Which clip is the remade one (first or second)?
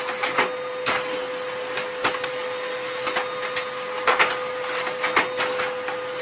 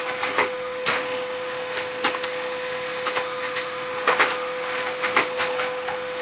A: second